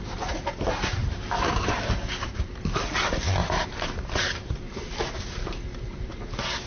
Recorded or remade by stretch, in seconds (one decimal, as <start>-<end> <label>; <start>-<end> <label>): 0.0-1.0 recorded; 1.0-1.7 remade; 1.7-2.3 recorded; 2.3-2.9 remade; 2.9-3.4 recorded; 3.4-6.1 remade; 6.1-6.7 recorded